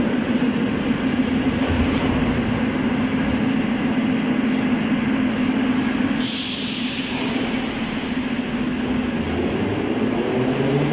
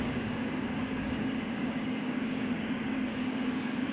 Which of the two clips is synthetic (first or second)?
second